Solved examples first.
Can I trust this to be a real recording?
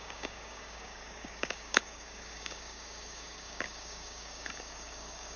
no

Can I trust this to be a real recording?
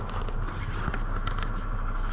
yes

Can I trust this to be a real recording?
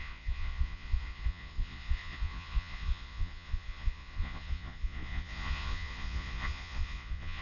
no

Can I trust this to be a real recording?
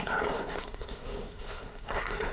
no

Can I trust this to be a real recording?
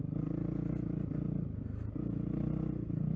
yes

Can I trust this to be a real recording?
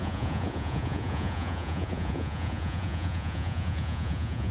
no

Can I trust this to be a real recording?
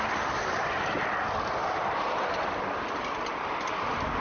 yes